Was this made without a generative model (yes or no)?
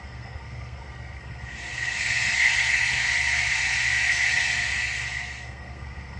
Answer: no